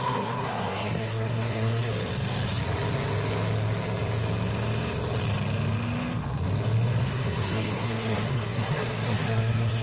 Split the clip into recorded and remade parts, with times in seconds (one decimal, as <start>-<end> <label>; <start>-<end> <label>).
0.0-1.9 remade; 1.9-7.1 recorded; 7.1-9.8 remade